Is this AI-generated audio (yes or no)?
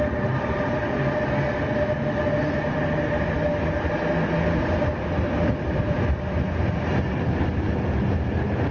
no